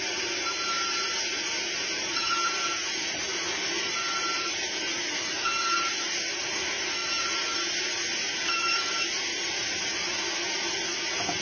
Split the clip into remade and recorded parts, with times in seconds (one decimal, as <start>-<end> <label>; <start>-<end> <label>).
0.0-11.4 recorded

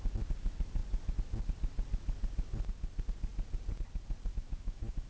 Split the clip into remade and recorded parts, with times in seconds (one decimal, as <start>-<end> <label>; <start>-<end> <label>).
0.0-4.3 recorded; 4.3-5.1 remade

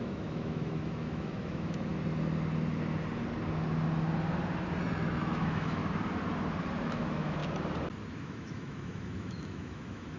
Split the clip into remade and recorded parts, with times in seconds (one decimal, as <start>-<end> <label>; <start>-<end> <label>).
0.0-1.9 remade; 1.9-4.8 recorded; 4.8-5.8 remade; 5.8-6.8 recorded; 6.8-7.4 remade; 7.4-8.1 recorded; 8.1-10.2 remade

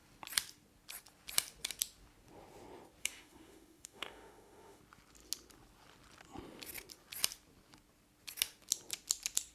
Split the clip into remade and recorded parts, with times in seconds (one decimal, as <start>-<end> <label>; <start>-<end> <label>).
0.0-3.0 recorded; 3.0-4.8 remade; 4.8-9.5 recorded

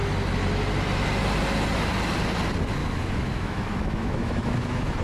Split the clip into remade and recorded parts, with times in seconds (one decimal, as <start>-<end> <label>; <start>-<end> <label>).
0.0-2.8 recorded; 2.8-5.0 remade

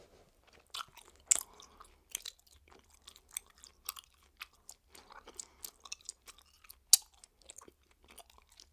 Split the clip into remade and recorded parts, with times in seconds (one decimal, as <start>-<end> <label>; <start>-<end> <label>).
0.0-8.7 recorded

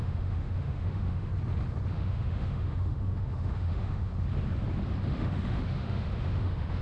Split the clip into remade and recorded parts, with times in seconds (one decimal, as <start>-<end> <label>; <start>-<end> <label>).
0.0-1.3 remade; 1.3-1.9 recorded; 1.9-4.1 remade; 4.1-5.0 recorded; 5.0-6.8 remade